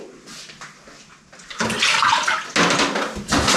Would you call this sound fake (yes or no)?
no